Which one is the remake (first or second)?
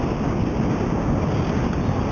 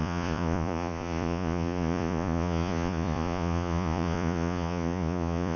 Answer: second